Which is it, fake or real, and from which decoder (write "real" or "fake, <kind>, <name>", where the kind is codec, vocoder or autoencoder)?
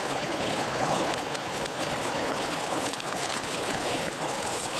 fake, codec, HILCodec